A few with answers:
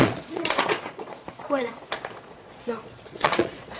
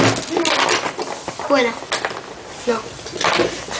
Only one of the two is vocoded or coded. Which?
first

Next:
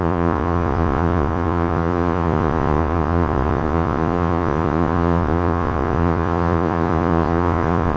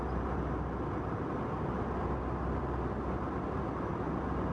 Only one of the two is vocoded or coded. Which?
first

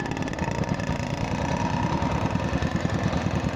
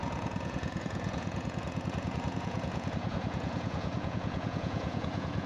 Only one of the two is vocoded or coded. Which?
second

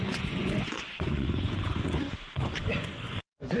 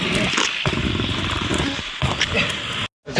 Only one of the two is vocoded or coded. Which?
first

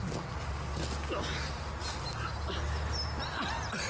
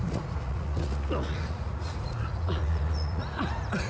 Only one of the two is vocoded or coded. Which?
second